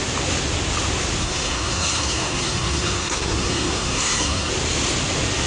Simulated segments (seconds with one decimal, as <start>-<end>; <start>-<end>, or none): 1.2-4.5